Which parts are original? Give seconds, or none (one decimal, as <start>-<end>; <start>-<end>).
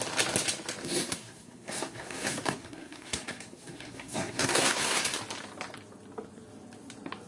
0.0-0.8; 5.2-7.3